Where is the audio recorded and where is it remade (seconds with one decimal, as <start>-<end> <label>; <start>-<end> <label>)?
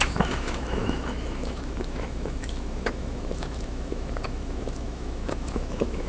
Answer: 0.0-6.1 remade